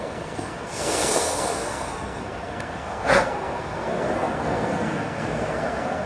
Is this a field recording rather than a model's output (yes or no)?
no